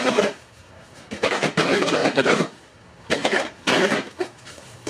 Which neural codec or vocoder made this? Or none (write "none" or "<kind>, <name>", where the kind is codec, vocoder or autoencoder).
codec, SNAC